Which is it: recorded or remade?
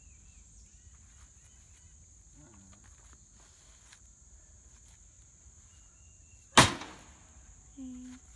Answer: recorded